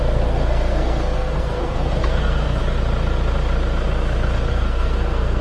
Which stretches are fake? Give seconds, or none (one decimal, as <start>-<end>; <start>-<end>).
0.0-2.6; 4.5-5.4

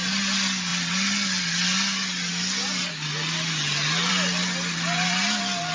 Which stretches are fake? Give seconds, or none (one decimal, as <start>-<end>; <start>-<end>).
none